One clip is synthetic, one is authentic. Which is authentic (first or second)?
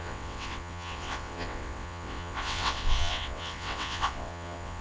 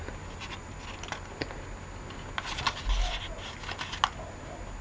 second